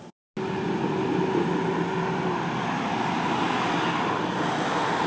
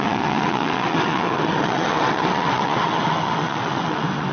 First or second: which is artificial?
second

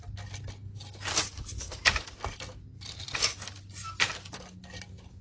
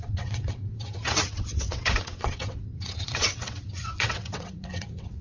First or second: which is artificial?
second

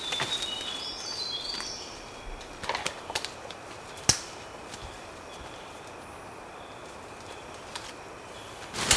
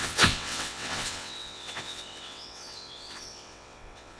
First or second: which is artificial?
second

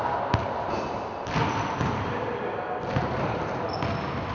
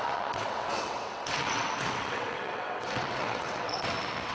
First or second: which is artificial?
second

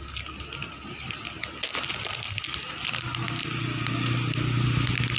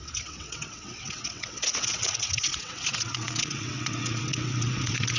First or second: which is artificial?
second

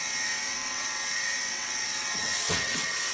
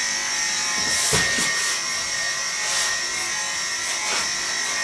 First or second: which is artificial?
first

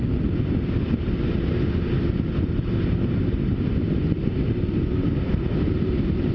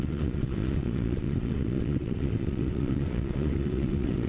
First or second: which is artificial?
second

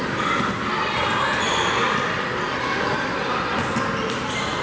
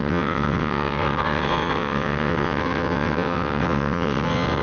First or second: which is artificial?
second